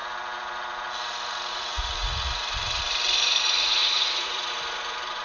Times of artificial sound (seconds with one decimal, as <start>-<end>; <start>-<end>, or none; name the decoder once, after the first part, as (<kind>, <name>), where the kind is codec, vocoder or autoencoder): 1.5-2.8 (vocoder, Vocos); 3.8-4.5